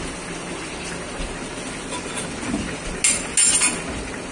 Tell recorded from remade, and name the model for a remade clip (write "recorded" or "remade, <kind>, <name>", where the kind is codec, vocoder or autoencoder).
recorded